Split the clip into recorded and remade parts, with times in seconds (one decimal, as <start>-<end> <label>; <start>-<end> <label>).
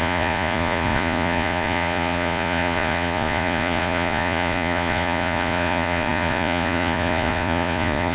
0.0-8.1 remade